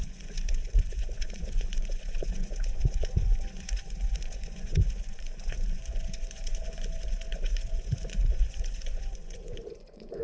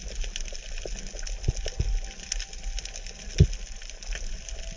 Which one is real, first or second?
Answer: second